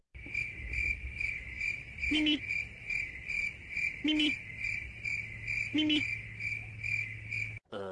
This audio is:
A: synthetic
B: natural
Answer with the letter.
B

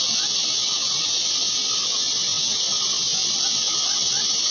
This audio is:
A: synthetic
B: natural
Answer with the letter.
B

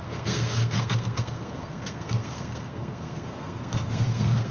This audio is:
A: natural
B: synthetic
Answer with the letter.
B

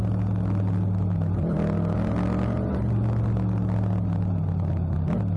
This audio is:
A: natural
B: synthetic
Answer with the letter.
A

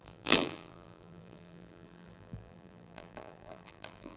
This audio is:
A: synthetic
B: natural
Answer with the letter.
A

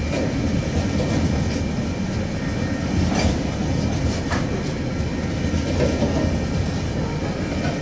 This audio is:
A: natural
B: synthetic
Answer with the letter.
A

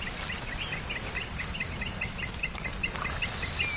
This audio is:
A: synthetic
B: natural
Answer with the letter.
B